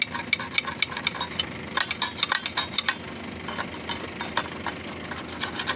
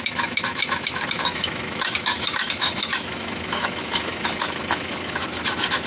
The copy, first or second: second